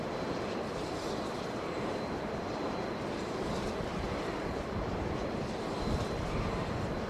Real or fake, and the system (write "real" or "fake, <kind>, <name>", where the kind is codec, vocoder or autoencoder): fake, vocoder, BigVGAN v2